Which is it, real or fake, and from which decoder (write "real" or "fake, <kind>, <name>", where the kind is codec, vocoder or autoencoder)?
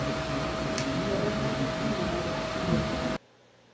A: real